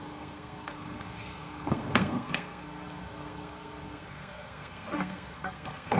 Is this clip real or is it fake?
fake